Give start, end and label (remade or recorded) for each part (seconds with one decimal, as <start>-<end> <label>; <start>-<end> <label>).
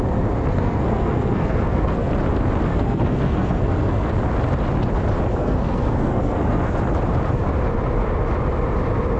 0.0-0.5 recorded; 0.5-2.1 remade; 2.1-2.7 recorded; 2.7-4.1 remade; 4.1-5.4 recorded; 5.4-6.7 remade; 6.7-9.2 recorded